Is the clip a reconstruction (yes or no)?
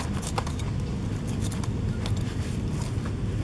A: no